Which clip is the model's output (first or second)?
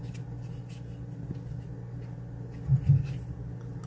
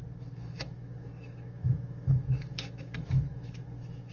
second